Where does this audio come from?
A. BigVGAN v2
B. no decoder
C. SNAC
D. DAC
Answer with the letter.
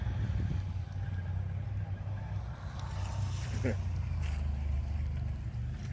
B